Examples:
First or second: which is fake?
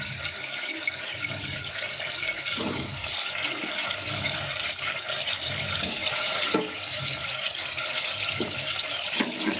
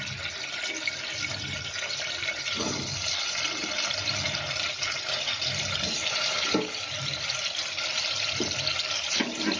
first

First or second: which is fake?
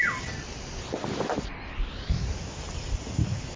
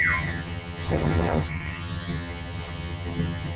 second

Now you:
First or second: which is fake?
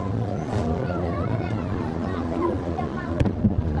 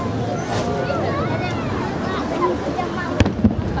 first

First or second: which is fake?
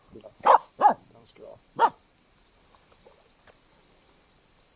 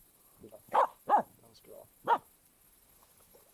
first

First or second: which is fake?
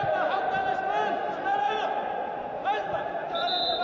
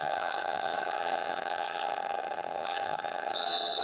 second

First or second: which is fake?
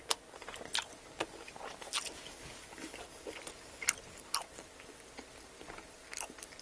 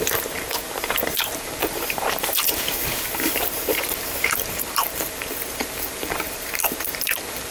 second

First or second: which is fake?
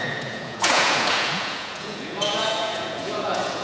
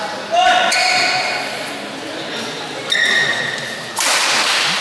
first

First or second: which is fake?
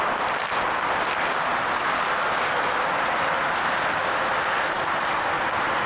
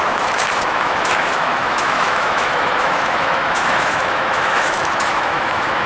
second